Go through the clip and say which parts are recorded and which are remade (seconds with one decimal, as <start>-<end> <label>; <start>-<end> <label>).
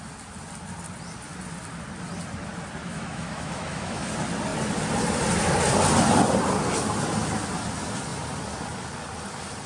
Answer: 0.0-2.9 recorded; 2.9-4.1 remade; 4.1-9.7 recorded